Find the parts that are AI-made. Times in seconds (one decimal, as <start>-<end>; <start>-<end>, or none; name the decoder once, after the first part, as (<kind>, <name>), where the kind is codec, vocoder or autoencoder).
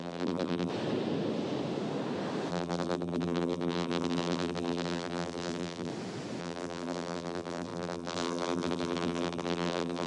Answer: 0.0-0.7 (vocoder, BigVGAN v2); 2.5-5.9; 6.4-10.1